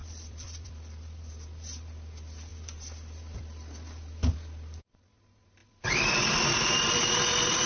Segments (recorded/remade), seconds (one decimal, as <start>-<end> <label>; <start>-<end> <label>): 0.0-1.3 remade; 1.3-5.6 recorded; 5.6-6.3 remade; 6.3-7.7 recorded